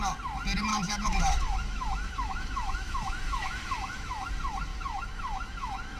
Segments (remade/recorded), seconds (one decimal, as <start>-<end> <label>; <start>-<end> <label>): 0.0-0.7 recorded; 0.7-4.3 remade; 4.3-4.7 recorded; 4.7-6.0 remade

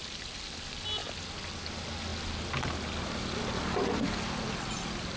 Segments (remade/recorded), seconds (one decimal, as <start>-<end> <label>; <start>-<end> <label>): 0.0-5.2 recorded

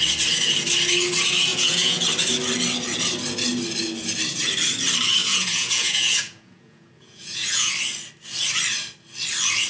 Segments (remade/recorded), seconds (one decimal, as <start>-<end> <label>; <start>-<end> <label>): 0.0-1.5 recorded; 1.5-2.1 remade; 2.1-5.2 recorded; 5.2-7.7 remade; 7.7-9.7 recorded

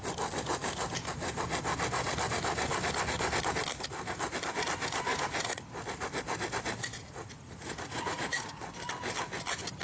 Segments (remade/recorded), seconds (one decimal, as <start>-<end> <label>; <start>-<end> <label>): 0.0-5.1 recorded; 5.1-5.7 remade; 5.7-6.8 recorded; 6.8-8.6 remade; 8.6-9.8 recorded

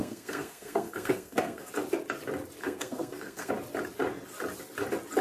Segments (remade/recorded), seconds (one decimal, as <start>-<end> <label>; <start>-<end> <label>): 0.0-1.7 remade; 1.7-2.6 recorded; 2.6-3.5 remade; 3.5-5.2 recorded

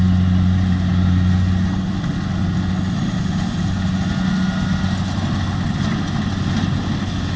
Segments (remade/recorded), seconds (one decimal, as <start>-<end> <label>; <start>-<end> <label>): 0.0-7.4 recorded